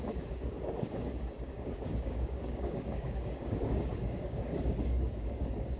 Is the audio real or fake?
fake